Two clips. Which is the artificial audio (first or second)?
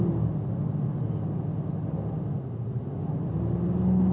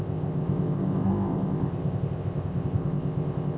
second